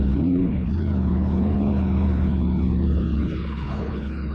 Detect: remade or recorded remade